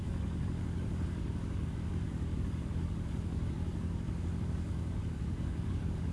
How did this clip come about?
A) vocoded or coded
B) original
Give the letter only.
A